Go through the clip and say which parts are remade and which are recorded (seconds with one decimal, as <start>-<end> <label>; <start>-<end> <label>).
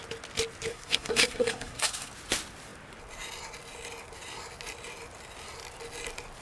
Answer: 0.0-0.7 recorded; 0.7-2.1 remade; 2.1-6.4 recorded